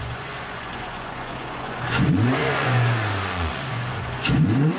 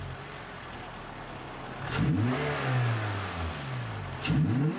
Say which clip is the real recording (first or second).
second